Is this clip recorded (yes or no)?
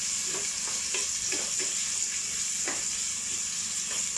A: yes